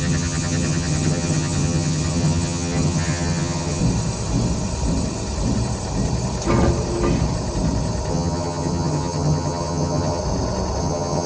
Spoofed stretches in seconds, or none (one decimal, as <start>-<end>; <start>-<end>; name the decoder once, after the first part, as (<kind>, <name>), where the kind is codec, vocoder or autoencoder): 0.0-3.8 (vocoder, HiFi-GAN); 8.1-10.2; 10.8-11.3